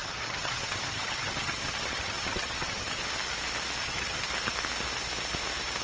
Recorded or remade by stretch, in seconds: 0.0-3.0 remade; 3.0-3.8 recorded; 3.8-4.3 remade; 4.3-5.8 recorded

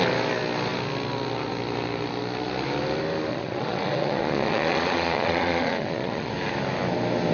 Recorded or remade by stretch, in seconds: 0.0-3.3 recorded; 3.3-6.3 remade; 6.3-7.3 recorded